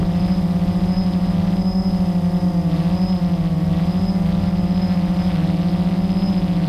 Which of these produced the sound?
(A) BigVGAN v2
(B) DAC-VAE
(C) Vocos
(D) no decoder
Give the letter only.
D